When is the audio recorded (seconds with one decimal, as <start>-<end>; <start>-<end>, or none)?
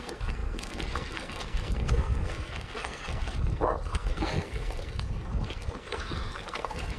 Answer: none